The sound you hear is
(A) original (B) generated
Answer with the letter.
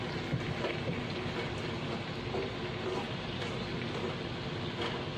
A